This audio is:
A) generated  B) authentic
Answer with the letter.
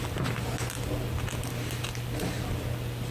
B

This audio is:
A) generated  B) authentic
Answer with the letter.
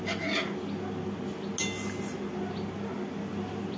B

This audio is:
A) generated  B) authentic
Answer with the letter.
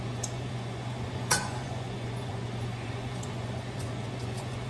A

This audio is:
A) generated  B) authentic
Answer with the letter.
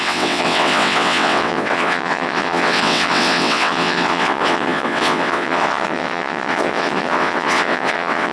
A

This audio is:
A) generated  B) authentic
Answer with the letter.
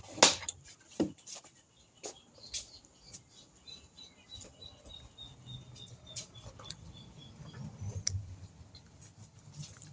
B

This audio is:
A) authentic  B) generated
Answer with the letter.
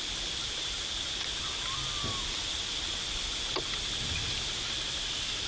A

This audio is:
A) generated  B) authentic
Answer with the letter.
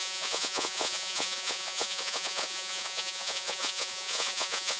A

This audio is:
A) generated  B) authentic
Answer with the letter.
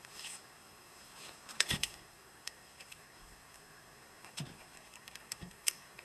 A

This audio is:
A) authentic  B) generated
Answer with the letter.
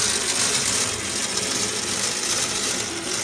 A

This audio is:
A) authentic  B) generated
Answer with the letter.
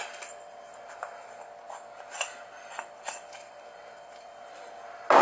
A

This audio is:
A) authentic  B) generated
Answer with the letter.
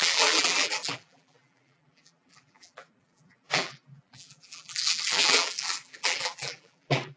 B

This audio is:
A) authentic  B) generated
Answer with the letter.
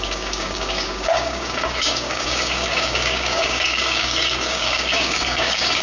B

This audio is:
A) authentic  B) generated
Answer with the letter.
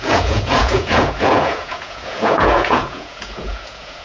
B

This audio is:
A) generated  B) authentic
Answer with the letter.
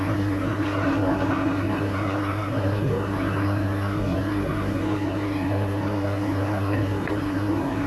A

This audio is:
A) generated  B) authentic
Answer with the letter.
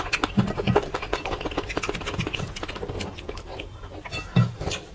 B